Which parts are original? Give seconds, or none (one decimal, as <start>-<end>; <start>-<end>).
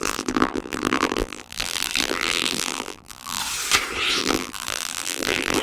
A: 3.4-4.2